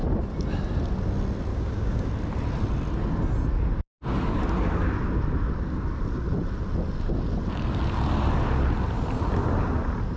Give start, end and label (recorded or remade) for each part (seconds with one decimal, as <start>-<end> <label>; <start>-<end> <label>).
0.0-1.5 recorded; 1.5-2.1 remade; 2.1-10.2 recorded